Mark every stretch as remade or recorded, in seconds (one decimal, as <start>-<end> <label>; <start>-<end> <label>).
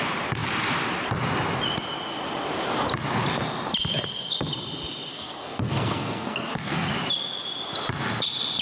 0.0-5.1 recorded; 5.1-6.9 remade; 6.9-8.6 recorded